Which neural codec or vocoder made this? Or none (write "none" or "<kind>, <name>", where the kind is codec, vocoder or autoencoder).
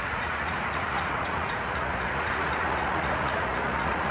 vocoder, Vocos